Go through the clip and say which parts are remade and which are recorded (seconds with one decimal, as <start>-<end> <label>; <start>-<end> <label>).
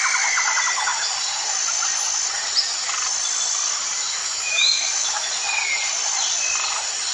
0.0-4.2 recorded; 4.2-5.3 remade; 5.3-7.1 recorded